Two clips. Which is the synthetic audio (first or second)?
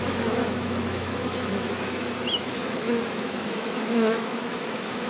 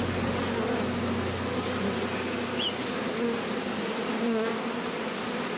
first